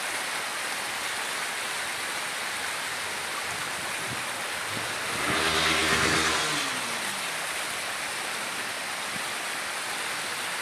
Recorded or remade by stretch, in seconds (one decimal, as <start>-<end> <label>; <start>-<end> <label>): 0.0-10.6 recorded